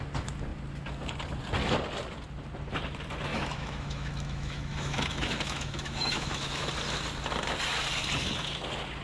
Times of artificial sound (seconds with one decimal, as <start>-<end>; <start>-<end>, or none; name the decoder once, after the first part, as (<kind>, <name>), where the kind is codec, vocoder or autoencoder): 3.3-6.7 (autoencoder, DAC-VAE)